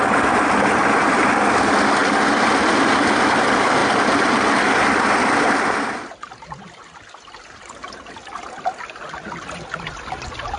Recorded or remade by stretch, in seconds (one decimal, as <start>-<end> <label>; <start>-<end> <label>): 0.0-10.6 recorded

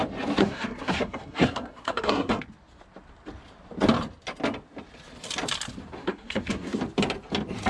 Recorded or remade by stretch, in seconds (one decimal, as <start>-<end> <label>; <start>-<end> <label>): 0.0-0.4 recorded; 0.4-2.4 remade; 2.4-6.0 recorded; 6.0-6.8 remade; 6.8-7.7 recorded

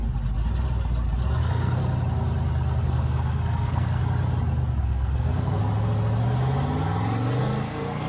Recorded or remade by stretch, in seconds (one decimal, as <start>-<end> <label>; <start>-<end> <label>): 0.0-1.4 recorded; 1.4-1.8 remade; 1.8-2.8 recorded; 2.8-4.0 remade; 4.0-4.8 recorded; 4.8-5.6 remade; 5.6-7.4 recorded; 7.4-8.1 remade

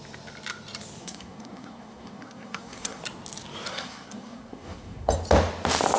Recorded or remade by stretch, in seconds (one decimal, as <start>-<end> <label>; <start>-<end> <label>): 0.0-1.0 recorded; 1.0-3.0 remade; 3.0-3.7 recorded; 3.7-5.1 remade; 5.1-6.0 recorded

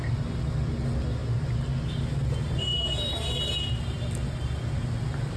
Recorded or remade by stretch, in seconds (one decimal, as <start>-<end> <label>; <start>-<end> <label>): 0.0-5.4 recorded

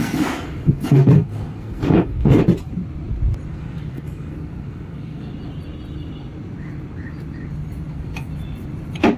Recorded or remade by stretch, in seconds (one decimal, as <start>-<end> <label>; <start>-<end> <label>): 0.0-2.4 remade; 2.4-3.5 recorded; 3.5-5.3 remade; 5.3-7.9 recorded; 7.9-8.3 remade; 8.3-9.2 recorded

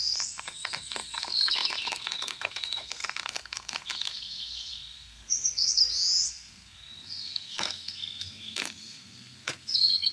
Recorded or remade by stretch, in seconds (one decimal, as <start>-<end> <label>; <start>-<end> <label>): 0.0-5.8 remade; 5.8-6.3 recorded; 6.3-10.1 remade